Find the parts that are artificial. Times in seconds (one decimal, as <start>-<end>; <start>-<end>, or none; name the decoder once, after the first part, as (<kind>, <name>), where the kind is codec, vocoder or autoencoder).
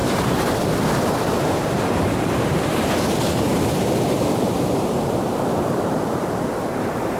0.0-7.2 (vocoder, BigVGAN v2)